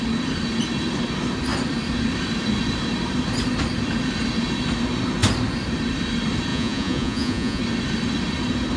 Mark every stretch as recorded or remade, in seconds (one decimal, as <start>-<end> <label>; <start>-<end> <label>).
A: 0.0-6.5 recorded; 6.5-7.6 remade; 7.6-8.8 recorded